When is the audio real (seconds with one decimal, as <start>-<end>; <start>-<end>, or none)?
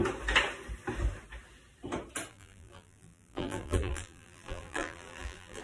0.0-2.3